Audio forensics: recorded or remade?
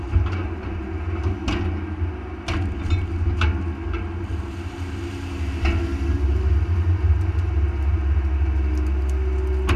recorded